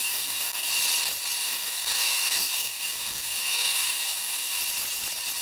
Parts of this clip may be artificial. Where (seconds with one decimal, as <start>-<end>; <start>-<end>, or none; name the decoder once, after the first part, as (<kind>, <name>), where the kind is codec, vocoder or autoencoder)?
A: 0.0-0.7 (codec, DAC); 1.4-4.6